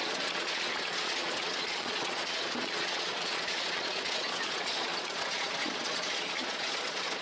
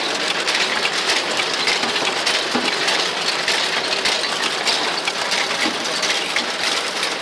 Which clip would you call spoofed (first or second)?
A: first